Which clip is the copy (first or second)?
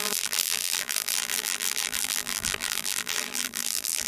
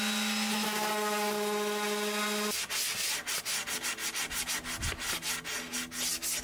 first